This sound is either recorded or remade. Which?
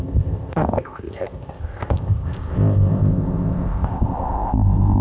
remade